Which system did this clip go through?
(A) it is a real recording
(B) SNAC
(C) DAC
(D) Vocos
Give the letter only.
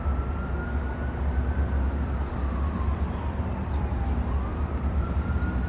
A